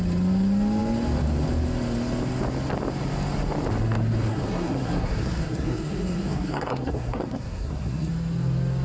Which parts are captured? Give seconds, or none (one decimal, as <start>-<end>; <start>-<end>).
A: 0.0-4.3; 8.1-8.8